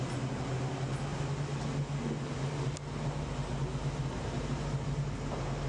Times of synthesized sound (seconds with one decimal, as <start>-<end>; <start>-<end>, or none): none